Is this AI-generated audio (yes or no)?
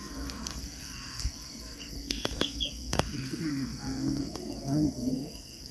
yes